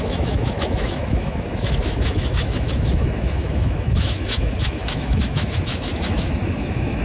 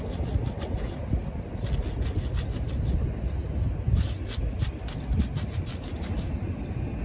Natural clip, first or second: second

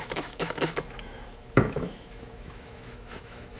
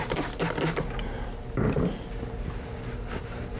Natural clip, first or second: second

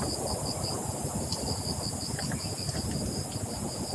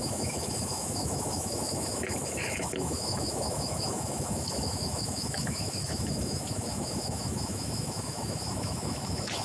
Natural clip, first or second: first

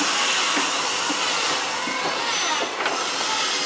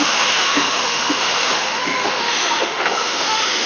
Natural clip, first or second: first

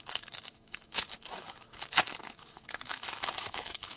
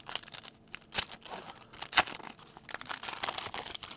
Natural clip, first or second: second